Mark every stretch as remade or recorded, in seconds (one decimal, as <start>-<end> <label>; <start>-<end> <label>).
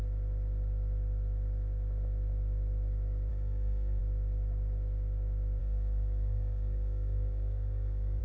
0.0-3.3 recorded; 3.3-4.0 remade; 4.0-5.6 recorded; 5.6-8.2 remade